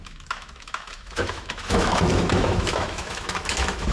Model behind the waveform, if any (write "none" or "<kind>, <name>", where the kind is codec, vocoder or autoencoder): autoencoder, DAC-VAE